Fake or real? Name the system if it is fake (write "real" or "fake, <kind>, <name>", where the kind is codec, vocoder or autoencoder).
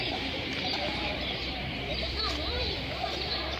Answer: fake, vocoder, BigVGAN v2